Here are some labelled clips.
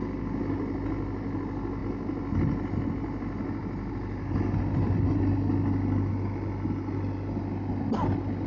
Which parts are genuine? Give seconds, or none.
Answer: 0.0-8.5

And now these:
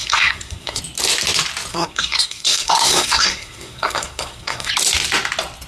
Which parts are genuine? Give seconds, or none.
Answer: 0.8-1.7; 4.7-5.7

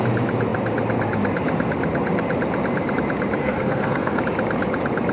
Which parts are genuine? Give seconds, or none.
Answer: 0.0-3.4; 4.2-5.1

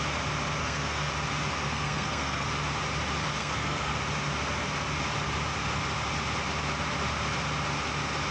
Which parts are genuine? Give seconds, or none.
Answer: 0.0-0.6; 1.1-1.6; 2.5-3.4; 4.0-8.3

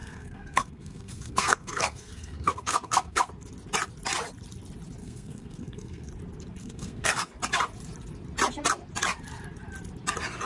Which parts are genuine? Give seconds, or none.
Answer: 3.3-5.0; 6.1-6.6; 7.3-10.5

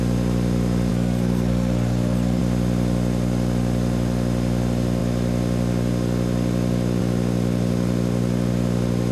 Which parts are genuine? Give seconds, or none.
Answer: 0.0-0.9; 2.4-9.1

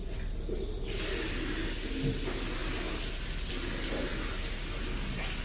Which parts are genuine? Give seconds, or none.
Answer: 0.0-5.4

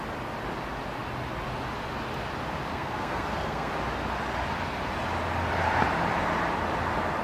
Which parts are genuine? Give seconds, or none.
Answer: 0.0-2.7; 3.7-7.2